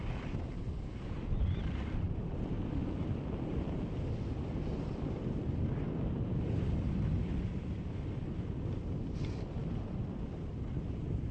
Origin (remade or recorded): recorded